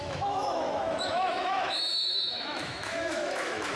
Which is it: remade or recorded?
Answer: remade